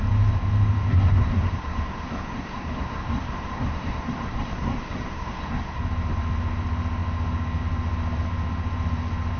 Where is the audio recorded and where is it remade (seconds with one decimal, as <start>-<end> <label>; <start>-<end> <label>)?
0.0-0.9 recorded; 0.9-5.8 remade; 5.8-9.4 recorded